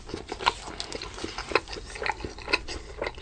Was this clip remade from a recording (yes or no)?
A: no